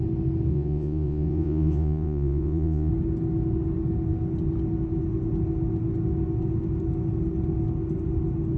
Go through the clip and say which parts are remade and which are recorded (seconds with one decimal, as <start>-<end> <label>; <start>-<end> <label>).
0.0-0.5 recorded; 0.5-2.9 remade; 2.9-8.6 recorded

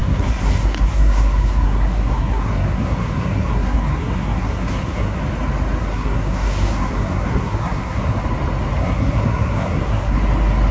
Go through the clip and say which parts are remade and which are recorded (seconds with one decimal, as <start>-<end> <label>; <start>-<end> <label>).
0.0-5.2 remade; 5.2-5.8 recorded; 5.8-8.2 remade; 8.2-8.8 recorded; 8.8-10.2 remade; 10.2-10.7 recorded

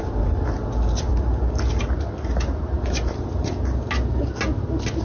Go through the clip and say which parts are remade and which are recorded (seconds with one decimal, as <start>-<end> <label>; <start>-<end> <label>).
0.0-5.0 recorded

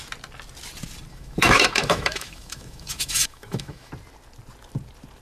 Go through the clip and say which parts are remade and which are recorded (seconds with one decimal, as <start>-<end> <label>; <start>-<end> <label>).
0.0-1.1 recorded; 1.1-3.9 remade; 3.9-5.2 recorded

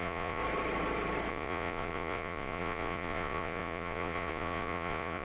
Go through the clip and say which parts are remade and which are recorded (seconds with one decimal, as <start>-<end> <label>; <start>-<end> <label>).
0.0-0.4 remade; 0.4-1.3 recorded; 1.3-5.2 remade

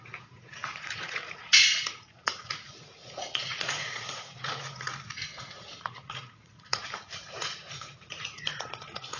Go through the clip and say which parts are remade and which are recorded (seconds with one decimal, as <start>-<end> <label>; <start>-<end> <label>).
0.0-9.2 remade

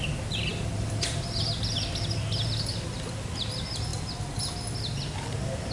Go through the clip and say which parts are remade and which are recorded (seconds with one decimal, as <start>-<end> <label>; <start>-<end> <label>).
0.0-5.7 recorded

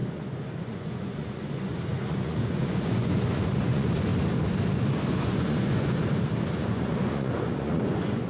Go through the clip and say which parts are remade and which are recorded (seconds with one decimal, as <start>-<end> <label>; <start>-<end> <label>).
0.0-4.1 remade; 4.1-5.2 recorded; 5.2-6.0 remade; 6.0-6.6 recorded; 6.6-8.3 remade